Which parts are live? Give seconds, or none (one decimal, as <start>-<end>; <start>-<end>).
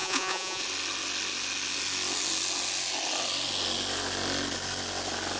0.6-5.4